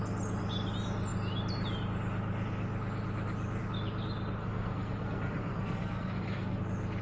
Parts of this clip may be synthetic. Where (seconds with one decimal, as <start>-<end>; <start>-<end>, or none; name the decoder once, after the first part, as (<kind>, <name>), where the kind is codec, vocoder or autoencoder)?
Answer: 4.4-6.6 (codec, SNAC)